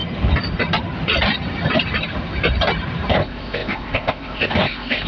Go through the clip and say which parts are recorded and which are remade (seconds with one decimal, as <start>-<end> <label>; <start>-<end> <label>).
0.0-3.1 recorded; 3.1-5.1 remade